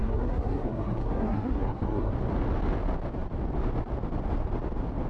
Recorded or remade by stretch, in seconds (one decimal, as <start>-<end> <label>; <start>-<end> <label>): 0.0-2.1 remade; 2.1-5.1 recorded